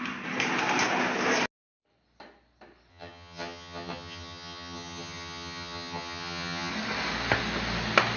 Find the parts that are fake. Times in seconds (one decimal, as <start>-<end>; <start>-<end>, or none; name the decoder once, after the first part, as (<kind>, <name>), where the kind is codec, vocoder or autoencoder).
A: 2.9-6.7 (vocoder, HiFi-GAN)